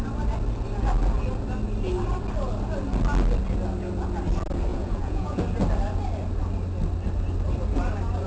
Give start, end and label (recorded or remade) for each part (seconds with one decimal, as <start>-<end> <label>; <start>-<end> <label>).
0.0-4.7 recorded; 4.7-5.4 remade; 5.4-8.3 recorded